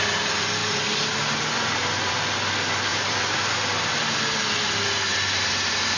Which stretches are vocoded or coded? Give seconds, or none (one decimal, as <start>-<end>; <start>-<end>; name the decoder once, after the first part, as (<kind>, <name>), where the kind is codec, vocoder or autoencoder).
2.9-3.9 (vocoder, BigVGAN v2)